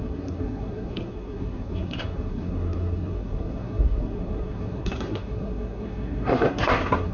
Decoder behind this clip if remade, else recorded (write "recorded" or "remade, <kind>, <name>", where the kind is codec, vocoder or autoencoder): remade, codec, SNAC